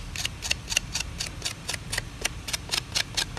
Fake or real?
real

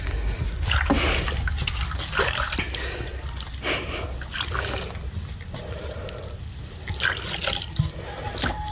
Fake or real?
real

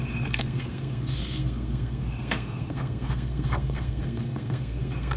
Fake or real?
fake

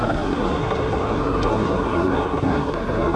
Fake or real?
fake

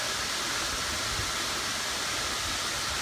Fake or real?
real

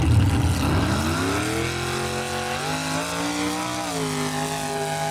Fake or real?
real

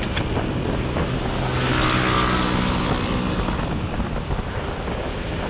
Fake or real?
real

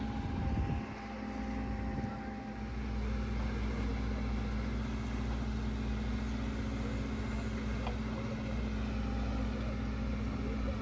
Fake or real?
real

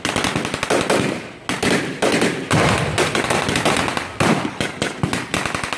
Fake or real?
real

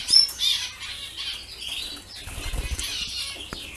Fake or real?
real